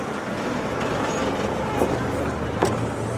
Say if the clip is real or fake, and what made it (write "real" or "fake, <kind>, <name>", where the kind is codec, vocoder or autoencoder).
real